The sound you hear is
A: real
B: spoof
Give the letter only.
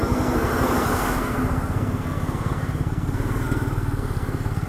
B